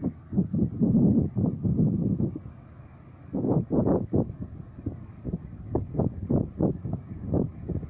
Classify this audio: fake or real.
real